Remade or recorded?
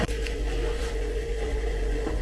remade